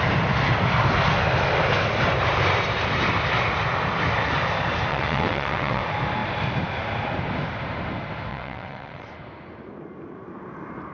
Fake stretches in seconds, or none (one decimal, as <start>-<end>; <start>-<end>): 4.9-5.8; 8.3-9.1